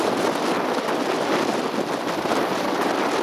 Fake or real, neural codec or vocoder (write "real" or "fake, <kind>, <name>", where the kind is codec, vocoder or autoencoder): real